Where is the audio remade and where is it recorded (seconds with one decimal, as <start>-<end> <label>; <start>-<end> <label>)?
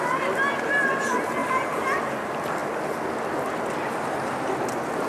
0.0-5.1 recorded